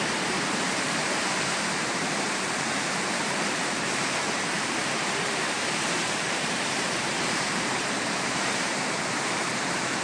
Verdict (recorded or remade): remade